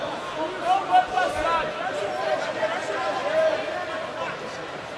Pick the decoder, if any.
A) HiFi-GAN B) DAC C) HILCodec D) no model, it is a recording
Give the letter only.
D